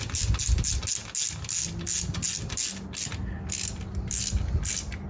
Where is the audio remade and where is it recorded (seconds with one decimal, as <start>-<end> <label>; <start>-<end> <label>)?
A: 0.0-5.1 recorded